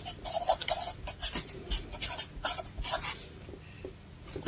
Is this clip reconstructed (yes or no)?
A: no